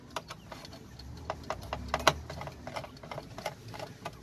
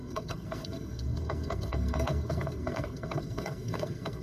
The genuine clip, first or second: first